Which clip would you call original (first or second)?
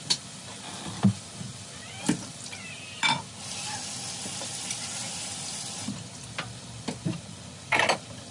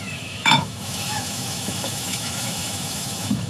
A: first